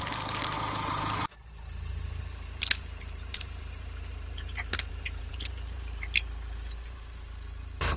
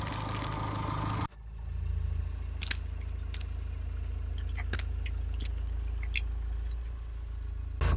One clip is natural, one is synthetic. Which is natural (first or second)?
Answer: second